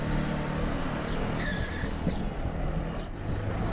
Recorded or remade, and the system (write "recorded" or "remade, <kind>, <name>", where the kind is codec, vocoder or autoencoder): recorded